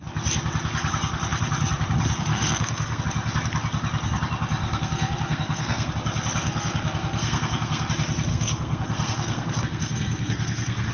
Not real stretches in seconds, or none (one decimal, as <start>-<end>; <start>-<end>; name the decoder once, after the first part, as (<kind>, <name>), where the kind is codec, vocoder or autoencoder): 2.3-3.0 (codec, SNAC); 4.6-5.9; 6.4-7.9; 8.3-10.9